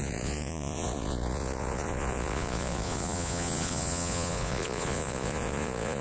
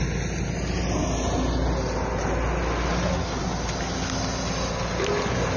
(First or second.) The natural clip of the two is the second